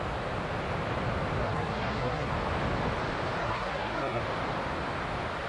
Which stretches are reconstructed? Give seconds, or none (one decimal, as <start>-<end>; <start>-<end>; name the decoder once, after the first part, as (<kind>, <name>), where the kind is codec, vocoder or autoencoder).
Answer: 1.4-2.3 (codec, SNAC); 3.4-4.2